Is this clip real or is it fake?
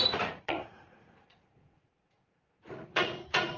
fake